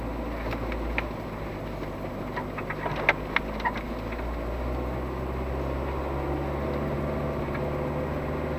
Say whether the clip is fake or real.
real